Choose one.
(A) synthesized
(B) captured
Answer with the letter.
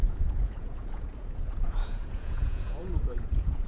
A